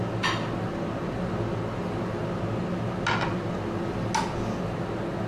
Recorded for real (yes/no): yes